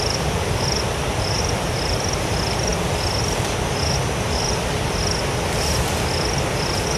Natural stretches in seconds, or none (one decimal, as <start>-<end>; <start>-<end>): 2.7-4.0